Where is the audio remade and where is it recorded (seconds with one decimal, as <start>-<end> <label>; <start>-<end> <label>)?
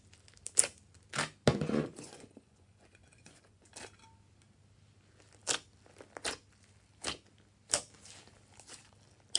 0.0-1.5 recorded; 1.5-3.7 remade; 3.7-9.4 recorded